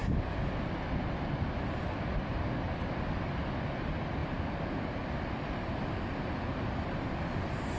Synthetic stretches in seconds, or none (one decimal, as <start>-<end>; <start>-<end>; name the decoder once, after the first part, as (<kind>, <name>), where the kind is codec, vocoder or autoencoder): none

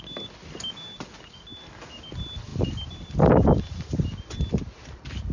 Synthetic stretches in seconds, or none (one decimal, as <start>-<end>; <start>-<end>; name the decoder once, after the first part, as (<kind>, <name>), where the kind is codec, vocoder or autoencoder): 2.5-5.3 (vocoder, BigVGAN v2)

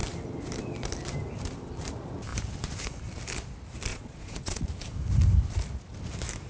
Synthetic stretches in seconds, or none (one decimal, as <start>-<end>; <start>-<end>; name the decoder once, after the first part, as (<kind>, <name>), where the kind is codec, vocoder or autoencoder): 3.9-4.7 (vocoder, Vocos)

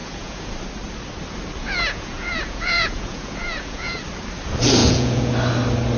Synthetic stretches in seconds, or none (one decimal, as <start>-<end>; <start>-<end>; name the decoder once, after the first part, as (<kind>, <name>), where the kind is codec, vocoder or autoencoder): 0.0-0.5 (vocoder, Vocos); 1.6-4.0; 4.8-5.3

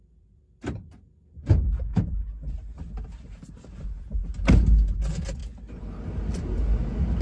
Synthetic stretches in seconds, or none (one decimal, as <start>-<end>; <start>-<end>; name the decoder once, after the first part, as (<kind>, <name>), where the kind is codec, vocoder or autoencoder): 1.9-4.2 (vocoder, BigVGAN v2)

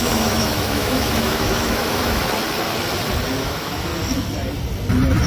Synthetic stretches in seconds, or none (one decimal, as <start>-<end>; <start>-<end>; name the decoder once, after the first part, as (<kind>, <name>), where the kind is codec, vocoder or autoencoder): 0.0-2.2 (autoencoder, DAC-VAE); 3.4-3.9

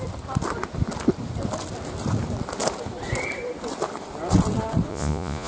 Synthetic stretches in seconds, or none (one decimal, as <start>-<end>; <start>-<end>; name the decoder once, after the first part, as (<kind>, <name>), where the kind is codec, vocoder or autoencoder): 4.9-5.5 (vocoder, Vocos)